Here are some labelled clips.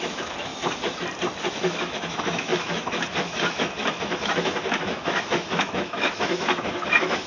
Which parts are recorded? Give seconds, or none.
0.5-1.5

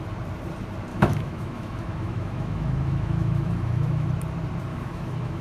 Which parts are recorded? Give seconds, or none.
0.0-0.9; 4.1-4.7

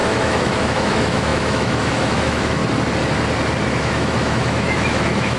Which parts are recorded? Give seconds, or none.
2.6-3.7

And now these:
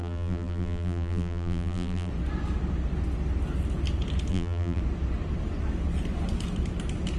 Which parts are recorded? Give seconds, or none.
2.1-4.3; 4.8-7.2

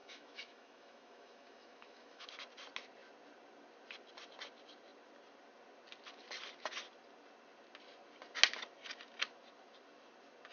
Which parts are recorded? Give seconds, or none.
2.3-10.5

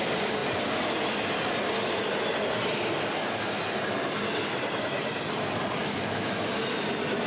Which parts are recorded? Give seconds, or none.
0.0-5.8; 6.5-7.3

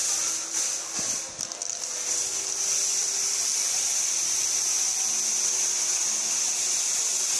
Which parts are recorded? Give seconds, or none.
0.0-7.4

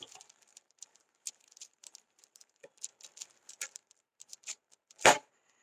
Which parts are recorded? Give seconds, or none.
2.9-3.5